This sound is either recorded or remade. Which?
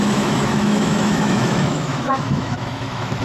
remade